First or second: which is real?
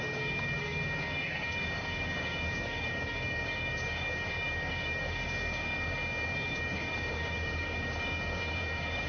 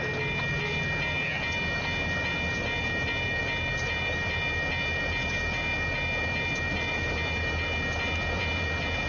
second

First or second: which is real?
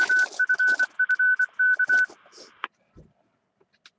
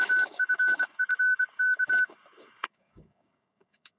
first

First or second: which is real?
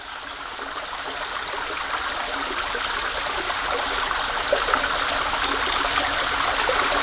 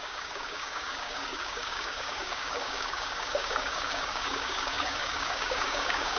first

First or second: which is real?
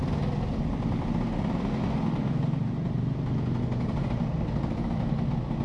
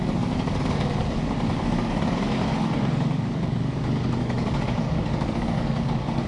first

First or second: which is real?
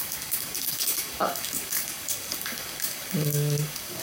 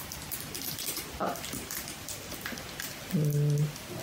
second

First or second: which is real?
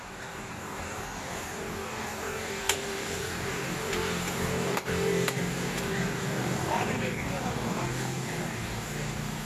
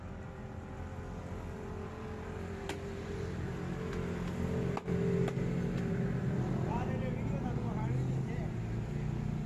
second